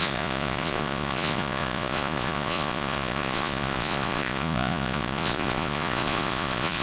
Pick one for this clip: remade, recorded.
remade